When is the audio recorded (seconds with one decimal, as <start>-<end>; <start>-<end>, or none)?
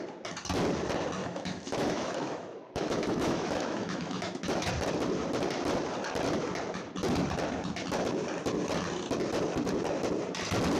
0.0-1.2; 4.7-10.8